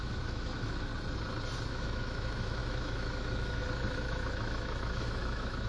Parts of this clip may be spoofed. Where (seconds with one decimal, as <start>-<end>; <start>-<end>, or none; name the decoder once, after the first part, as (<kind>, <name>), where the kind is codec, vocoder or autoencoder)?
0.0-0.9 (autoencoder, DAC-VAE); 1.7-5.7